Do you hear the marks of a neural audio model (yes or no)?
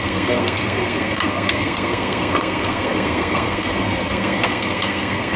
yes